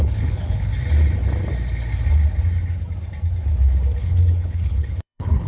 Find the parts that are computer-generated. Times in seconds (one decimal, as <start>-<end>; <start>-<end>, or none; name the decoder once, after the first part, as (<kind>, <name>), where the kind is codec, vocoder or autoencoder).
0.0-0.7 (codec, HILCodec); 4.0-5.5